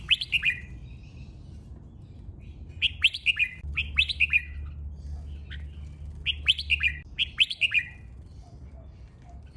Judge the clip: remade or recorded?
recorded